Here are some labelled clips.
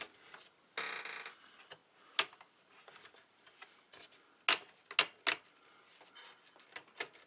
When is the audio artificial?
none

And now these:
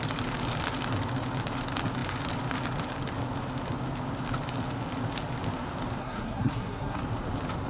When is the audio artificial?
6.0-7.0 (codec, SNAC)

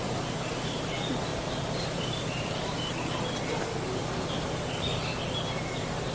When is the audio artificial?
1.3-2.6 (vocoder, BigVGAN v2)

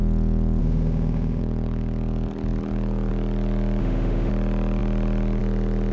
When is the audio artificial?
0.6-1.4 (autoencoder, DAC-VAE); 3.8-4.3